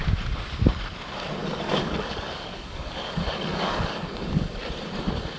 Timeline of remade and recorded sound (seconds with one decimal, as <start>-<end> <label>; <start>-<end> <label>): 0.0-1.4 recorded; 1.4-4.6 remade; 4.6-5.4 recorded